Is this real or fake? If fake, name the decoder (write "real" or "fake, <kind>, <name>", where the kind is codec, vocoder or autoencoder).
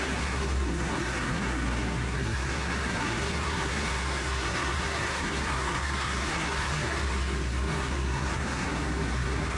fake, codec, SNAC